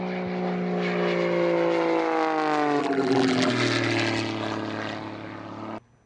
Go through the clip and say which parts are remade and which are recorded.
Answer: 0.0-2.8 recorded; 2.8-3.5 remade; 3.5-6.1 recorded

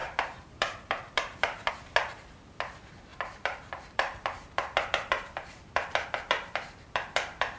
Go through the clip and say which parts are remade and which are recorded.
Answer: 0.0-1.7 remade; 1.7-3.1 recorded; 3.1-7.6 remade

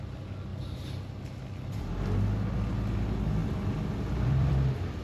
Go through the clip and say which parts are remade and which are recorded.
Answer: 0.0-3.4 recorded; 3.4-4.5 remade; 4.5-5.0 recorded

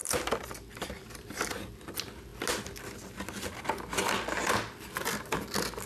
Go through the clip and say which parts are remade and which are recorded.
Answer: 0.0-1.4 remade; 1.4-5.9 recorded

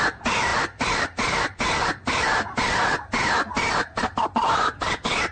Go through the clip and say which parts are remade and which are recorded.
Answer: 0.0-5.3 recorded

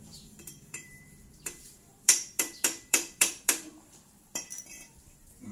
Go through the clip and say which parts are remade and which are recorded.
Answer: 0.0-5.5 remade